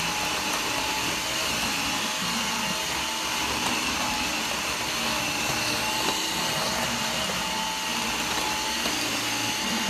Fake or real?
real